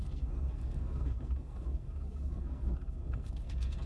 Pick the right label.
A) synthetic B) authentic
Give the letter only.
A